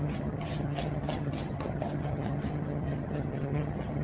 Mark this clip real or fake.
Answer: fake